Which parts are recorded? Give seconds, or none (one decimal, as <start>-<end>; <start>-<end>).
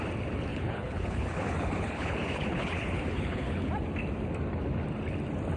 0.0-0.5; 3.7-5.6